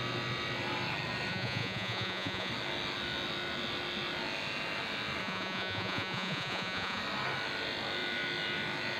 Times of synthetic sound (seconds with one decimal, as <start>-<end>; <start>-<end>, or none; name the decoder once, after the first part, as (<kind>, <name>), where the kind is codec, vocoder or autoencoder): 1.3-2.5 (vocoder, Vocos); 5.2-7.0